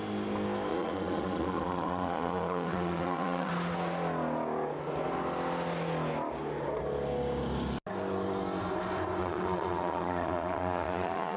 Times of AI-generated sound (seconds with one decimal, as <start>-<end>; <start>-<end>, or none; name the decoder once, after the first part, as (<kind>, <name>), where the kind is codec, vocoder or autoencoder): 0.7-3.5 (vocoder, Vocos); 9.2-11.4